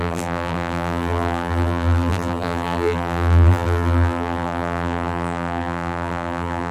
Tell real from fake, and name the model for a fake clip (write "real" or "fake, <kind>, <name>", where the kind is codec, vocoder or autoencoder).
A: fake, vocoder, BigVGAN v2